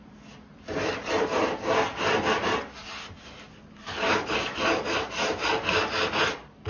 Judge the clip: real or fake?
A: real